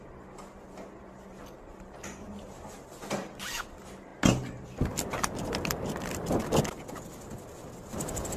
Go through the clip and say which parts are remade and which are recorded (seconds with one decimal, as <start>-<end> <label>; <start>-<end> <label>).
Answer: 0.0-8.4 recorded